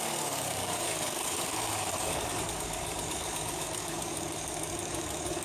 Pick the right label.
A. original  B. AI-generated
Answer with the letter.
B